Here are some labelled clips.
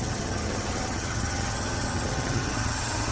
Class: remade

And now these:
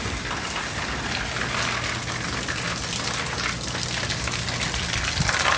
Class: recorded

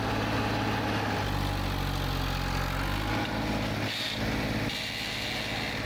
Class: recorded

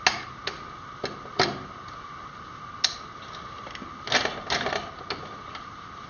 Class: recorded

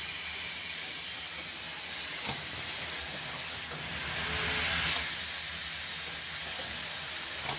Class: recorded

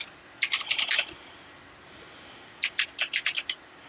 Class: recorded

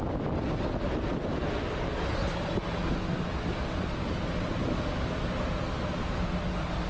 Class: recorded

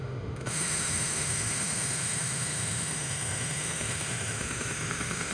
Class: remade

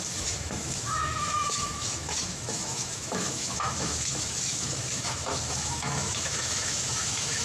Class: remade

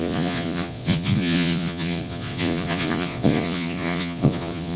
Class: remade